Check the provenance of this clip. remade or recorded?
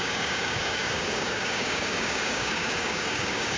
remade